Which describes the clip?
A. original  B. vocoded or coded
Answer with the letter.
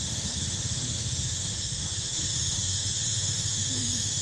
B